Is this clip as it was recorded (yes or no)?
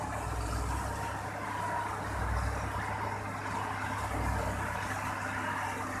yes